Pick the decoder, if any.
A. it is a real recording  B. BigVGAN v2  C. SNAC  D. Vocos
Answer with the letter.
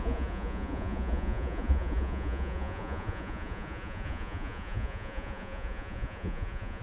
D